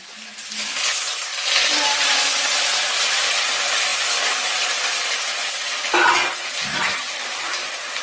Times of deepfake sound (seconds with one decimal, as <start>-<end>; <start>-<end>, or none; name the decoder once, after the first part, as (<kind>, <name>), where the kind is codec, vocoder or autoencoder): 6.7-7.2 (vocoder, HiFi-GAN)